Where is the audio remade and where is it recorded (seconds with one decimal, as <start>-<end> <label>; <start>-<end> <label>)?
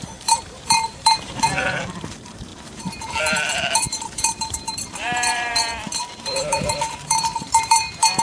0.0-5.6 remade; 5.6-6.2 recorded; 6.2-8.2 remade